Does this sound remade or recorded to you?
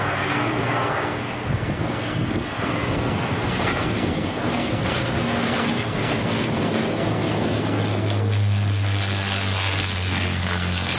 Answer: remade